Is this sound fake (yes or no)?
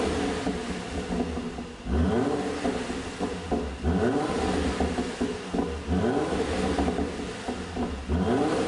no